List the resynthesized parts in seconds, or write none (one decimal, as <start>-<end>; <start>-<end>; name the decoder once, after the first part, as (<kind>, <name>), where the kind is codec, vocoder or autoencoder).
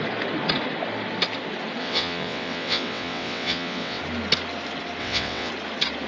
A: 1.8-4.0 (vocoder, WaveNeXt); 5.0-5.5